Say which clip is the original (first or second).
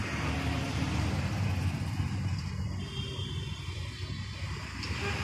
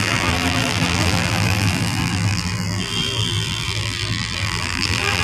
first